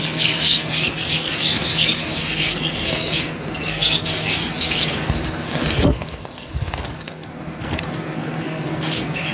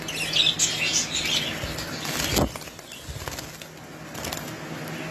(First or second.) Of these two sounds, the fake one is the first